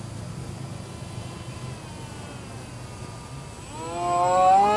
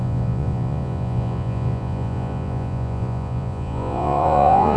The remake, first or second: second